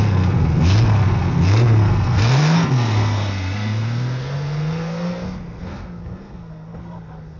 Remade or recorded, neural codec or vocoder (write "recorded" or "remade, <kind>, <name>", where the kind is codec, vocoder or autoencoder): remade, codec, SNAC